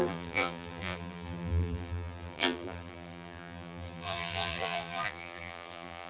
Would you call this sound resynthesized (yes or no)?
yes